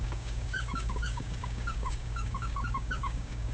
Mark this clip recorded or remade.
remade